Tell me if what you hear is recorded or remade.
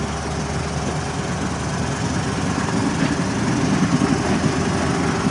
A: recorded